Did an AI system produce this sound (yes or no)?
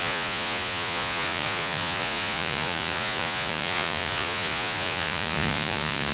yes